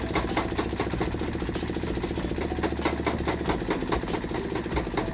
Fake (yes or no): no